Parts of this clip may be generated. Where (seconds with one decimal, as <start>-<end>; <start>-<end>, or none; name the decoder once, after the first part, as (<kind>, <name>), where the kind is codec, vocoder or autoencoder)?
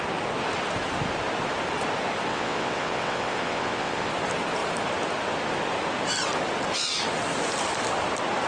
2.3-4.1 (vocoder, WaveNeXt)